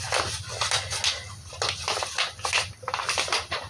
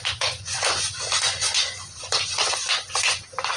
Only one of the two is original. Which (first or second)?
first